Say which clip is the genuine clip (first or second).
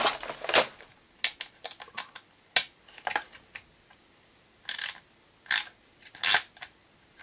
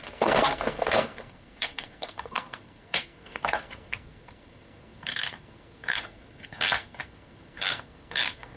first